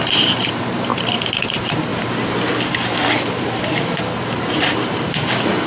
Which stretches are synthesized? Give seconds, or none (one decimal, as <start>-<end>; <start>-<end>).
0.0-1.9; 3.4-5.7